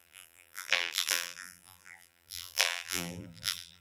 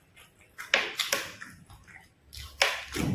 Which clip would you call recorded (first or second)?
second